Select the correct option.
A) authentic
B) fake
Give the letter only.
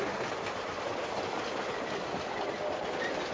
A